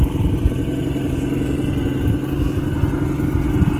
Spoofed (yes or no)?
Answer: no